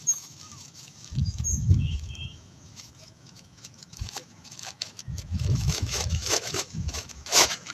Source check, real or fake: fake